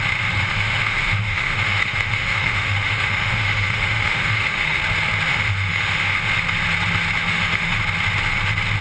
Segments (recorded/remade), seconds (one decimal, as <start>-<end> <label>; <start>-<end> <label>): 0.0-0.5 recorded; 0.5-4.8 remade; 4.8-5.3 recorded; 5.3-6.3 remade; 6.3-7.3 recorded; 7.3-7.8 remade; 7.8-8.8 recorded